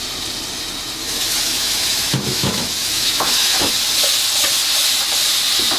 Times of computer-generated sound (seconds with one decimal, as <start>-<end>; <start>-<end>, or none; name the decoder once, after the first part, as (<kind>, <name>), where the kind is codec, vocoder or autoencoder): 1.0-3.7 (autoencoder, DAC-VAE)